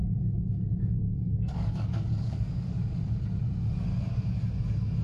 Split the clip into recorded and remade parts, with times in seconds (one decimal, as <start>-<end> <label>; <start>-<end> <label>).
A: 0.0-3.0 remade; 3.0-5.0 recorded